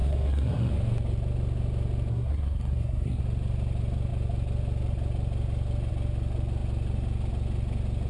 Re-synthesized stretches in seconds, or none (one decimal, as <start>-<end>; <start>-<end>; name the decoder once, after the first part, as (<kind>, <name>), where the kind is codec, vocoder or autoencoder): 0.0-0.7 (codec, SNAC); 2.1-3.2